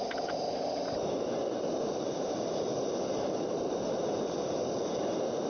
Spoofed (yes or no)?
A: no